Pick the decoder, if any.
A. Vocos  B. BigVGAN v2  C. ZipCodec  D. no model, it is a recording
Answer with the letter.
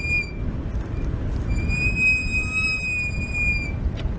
D